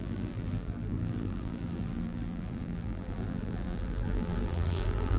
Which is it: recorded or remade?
remade